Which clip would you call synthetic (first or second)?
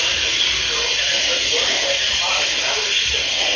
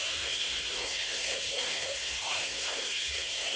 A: second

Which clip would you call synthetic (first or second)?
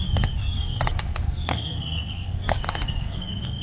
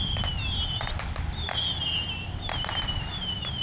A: first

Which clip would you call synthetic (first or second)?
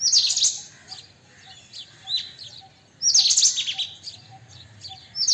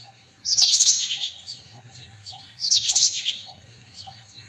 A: second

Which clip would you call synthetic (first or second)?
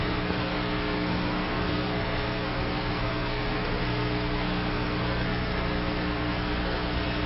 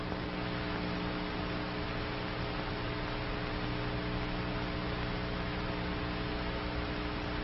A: first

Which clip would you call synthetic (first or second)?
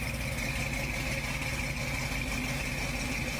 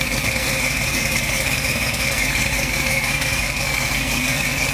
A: second